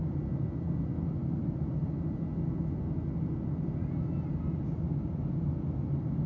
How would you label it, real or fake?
real